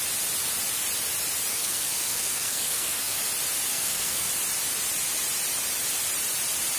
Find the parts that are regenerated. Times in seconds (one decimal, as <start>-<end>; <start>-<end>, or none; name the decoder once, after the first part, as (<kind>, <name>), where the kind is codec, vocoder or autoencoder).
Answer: 1.5-3.2 (codec, SNAC); 3.7-4.3